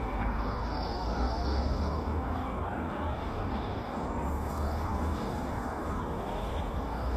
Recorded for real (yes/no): no